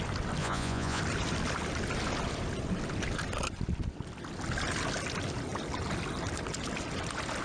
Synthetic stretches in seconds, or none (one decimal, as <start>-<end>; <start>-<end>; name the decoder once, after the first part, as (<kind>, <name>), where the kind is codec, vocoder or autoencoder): 0.4-1.0 (vocoder, Vocos)